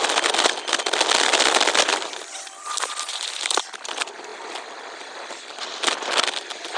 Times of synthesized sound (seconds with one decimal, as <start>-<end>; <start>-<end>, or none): none